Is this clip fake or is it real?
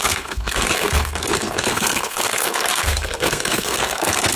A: fake